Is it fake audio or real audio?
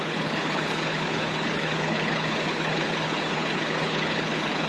fake